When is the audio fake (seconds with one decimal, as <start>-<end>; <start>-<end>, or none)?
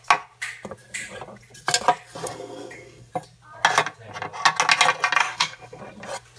2.2-3.1; 5.2-5.8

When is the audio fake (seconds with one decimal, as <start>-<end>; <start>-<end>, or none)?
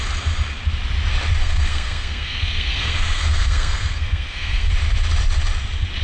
1.4-4.7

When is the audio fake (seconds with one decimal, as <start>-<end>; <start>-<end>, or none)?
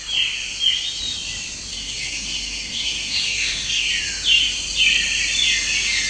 1.7-3.9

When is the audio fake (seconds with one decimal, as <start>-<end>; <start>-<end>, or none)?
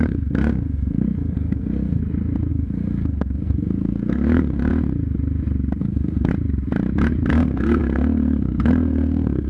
0.0-2.0; 2.5-4.7; 5.8-6.3; 7.3-9.5